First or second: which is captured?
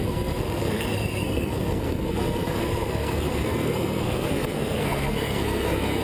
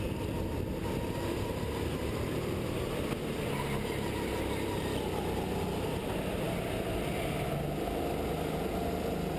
second